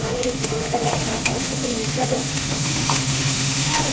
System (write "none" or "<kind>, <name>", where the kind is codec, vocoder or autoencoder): autoencoder, DAC-VAE